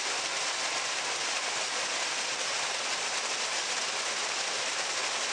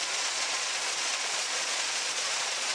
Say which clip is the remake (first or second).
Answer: second